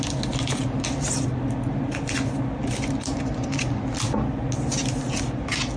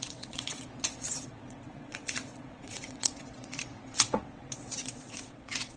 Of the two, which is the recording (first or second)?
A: first